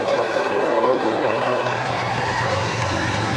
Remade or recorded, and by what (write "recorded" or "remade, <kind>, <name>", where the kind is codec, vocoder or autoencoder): remade, codec, SNAC